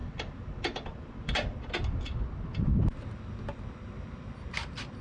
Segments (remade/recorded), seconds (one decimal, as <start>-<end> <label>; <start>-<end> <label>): 0.0-5.0 recorded